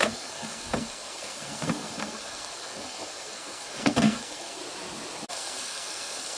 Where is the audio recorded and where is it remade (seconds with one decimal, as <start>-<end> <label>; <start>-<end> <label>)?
0.0-4.6 remade; 4.6-5.3 recorded; 5.3-6.4 remade